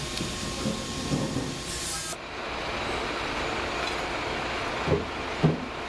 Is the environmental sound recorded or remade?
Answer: recorded